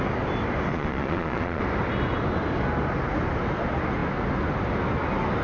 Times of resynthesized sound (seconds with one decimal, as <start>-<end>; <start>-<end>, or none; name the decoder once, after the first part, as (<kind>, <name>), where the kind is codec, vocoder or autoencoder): 0.7-1.6 (vocoder, Vocos)